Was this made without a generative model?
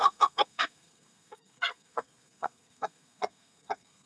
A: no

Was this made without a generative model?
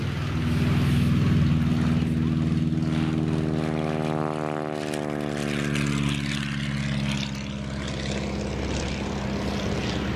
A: yes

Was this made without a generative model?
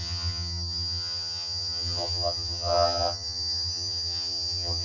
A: no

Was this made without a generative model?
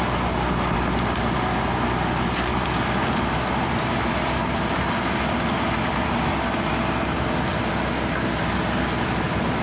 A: yes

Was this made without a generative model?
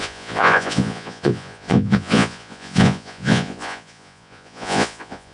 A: no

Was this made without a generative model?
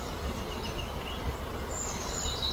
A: yes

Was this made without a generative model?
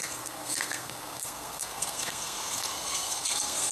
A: no